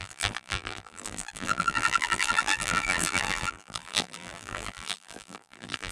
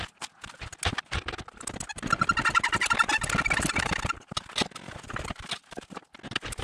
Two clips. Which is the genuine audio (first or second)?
second